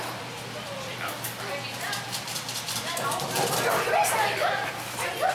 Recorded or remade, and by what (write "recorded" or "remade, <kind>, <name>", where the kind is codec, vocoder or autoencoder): remade, vocoder, BigVGAN v2